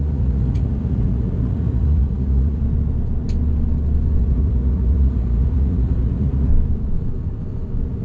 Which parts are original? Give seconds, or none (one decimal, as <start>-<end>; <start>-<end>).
2.6-4.2; 6.5-8.0